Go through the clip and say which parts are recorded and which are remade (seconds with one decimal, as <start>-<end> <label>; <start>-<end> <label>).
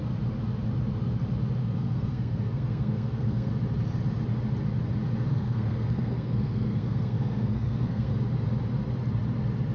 0.0-1.6 recorded; 1.6-3.5 remade; 3.5-5.3 recorded; 5.3-8.1 remade; 8.1-9.7 recorded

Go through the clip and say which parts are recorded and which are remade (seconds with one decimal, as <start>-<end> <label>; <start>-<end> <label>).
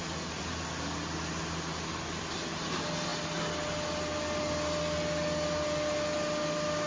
0.0-6.9 recorded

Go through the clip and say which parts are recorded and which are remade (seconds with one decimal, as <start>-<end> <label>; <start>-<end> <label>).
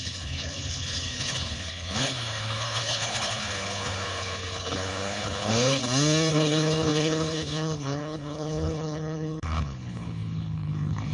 0.0-5.8 remade; 5.8-6.3 recorded; 6.3-11.1 remade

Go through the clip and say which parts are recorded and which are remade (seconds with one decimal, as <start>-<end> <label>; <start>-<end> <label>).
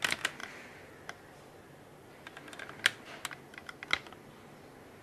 0.0-5.0 recorded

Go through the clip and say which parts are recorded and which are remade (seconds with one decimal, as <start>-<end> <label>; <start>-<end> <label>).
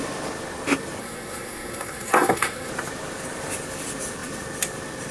0.0-1.0 recorded; 1.0-2.7 remade; 2.7-5.1 recorded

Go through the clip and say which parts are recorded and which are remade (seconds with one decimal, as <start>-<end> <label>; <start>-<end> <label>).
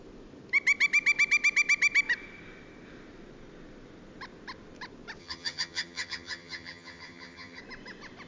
0.0-5.2 recorded; 5.2-7.6 remade; 7.6-8.3 recorded